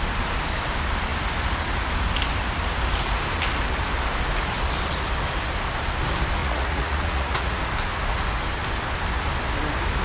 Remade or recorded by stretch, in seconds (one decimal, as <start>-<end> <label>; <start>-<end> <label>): 0.0-6.4 recorded; 6.4-7.6 remade; 7.6-10.0 recorded